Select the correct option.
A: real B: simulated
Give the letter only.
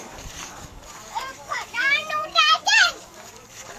B